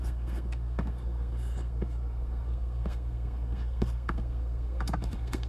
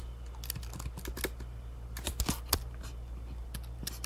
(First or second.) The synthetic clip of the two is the first